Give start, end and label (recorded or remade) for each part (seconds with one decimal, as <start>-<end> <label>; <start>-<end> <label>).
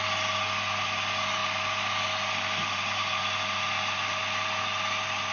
0.0-5.3 recorded